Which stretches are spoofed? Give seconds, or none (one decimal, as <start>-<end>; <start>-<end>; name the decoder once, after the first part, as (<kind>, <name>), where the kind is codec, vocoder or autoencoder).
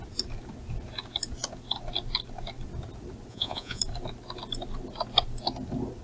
3.3-3.8 (vocoder, Vocos)